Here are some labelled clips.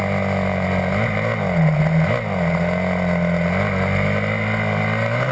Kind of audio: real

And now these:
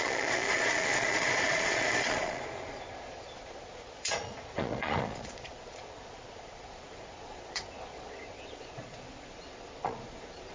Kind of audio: fake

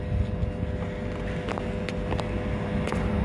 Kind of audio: real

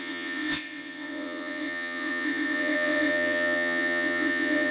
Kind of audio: fake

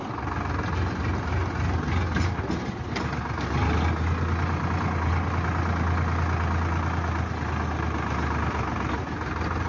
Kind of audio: real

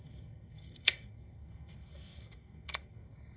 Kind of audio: fake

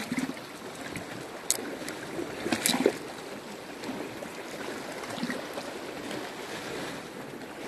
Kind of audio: real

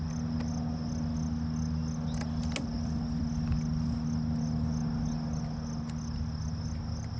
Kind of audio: real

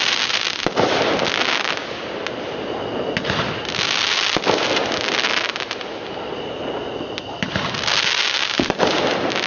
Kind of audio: real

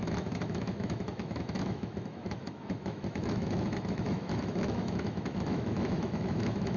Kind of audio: fake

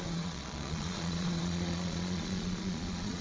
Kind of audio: fake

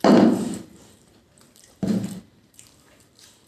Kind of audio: fake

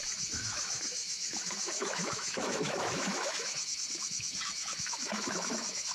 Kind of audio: fake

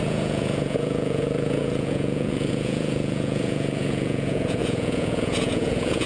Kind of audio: fake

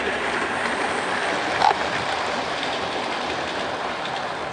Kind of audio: real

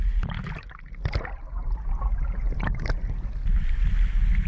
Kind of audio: real